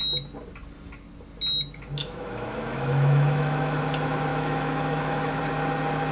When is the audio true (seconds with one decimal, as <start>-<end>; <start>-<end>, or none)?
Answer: 0.0-2.0; 3.8-4.3; 5.4-6.1